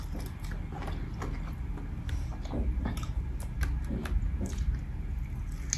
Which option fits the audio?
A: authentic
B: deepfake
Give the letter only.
A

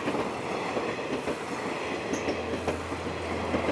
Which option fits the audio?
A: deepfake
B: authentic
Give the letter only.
B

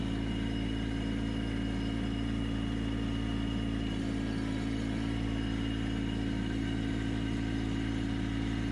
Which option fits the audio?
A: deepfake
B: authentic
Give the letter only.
B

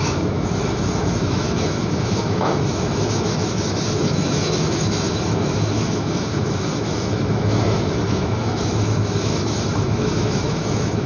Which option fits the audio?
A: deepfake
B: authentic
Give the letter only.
A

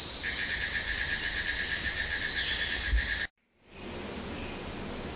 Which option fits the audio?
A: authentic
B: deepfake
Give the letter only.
A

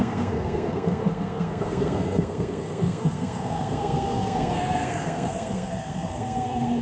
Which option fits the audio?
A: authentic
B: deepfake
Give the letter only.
B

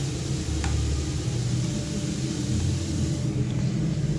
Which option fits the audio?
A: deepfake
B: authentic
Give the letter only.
B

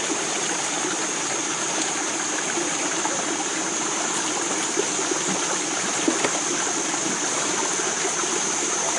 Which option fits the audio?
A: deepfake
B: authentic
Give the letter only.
B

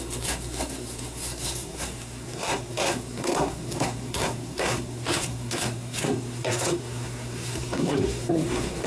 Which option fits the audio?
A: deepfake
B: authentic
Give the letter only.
A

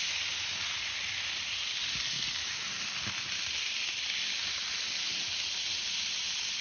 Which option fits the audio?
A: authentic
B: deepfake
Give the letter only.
A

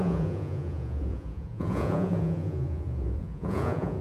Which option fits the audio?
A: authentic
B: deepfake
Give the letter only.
B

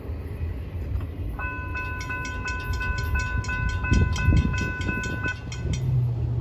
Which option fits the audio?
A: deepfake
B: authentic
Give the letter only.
B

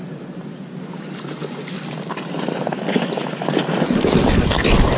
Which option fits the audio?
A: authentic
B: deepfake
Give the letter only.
A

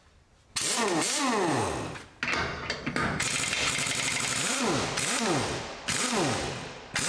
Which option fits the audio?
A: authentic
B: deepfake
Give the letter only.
A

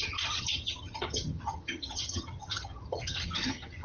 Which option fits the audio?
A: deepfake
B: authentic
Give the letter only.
A